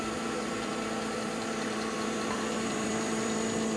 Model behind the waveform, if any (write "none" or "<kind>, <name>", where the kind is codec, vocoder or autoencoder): vocoder, BigVGAN v2